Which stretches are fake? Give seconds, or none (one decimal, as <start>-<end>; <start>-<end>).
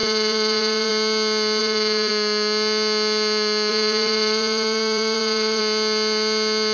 0.0-0.9; 1.6-2.1; 3.7-5.6